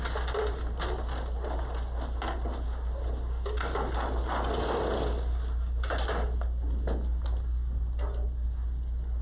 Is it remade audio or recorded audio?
recorded